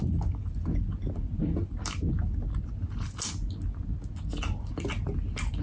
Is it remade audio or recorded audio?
recorded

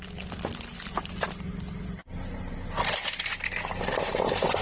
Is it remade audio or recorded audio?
recorded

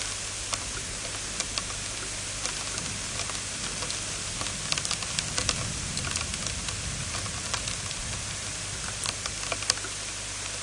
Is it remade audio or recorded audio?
recorded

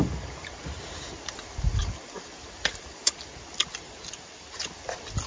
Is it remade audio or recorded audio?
recorded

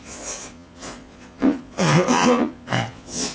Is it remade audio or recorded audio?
remade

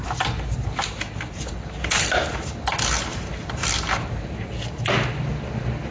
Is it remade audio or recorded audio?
recorded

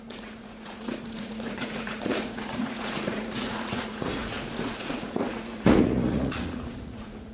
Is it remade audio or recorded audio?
remade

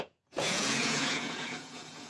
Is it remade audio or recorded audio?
remade